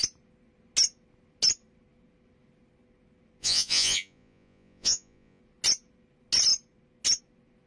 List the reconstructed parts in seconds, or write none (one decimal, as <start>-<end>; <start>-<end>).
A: 3.4-5.4